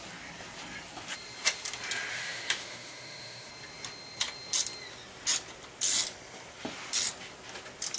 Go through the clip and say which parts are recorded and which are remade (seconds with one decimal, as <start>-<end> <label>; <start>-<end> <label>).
0.0-2.1 recorded; 2.1-3.5 remade; 3.5-8.0 recorded